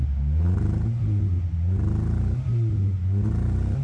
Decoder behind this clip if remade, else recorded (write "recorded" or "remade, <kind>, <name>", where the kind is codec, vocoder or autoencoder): recorded